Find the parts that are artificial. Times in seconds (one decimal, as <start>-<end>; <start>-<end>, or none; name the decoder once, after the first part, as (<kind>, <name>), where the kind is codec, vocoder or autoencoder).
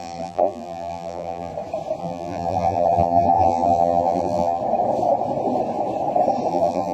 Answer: 0.0-1.5 (vocoder, BigVGAN v2); 2.0-4.6; 6.5-6.9